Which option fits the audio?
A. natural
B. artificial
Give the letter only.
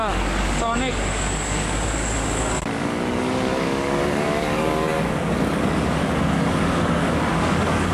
B